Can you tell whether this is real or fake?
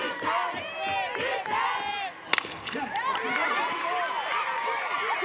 real